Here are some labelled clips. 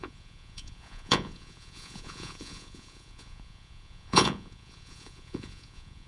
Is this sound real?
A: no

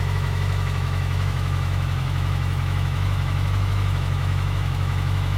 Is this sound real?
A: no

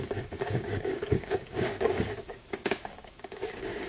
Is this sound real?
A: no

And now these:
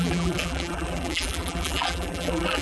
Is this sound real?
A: no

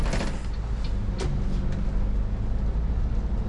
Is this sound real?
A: yes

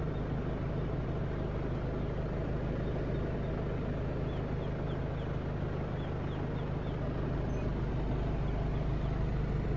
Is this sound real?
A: yes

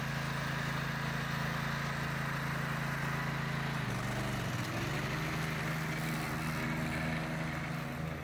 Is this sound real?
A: yes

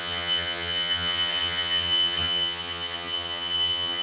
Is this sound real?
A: no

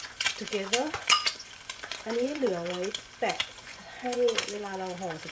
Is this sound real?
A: no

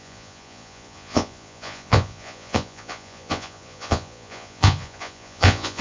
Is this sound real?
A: no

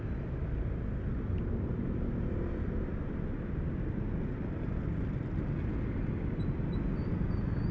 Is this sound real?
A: yes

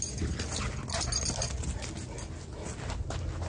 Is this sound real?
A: yes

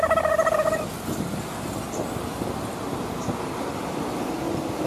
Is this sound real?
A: yes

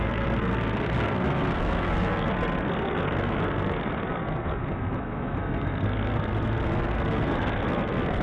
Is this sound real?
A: no